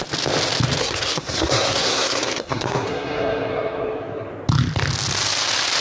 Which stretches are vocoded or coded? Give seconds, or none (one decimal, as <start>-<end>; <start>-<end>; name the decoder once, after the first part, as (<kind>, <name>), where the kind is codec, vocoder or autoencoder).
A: 0.8-4.3 (codec, SNAC)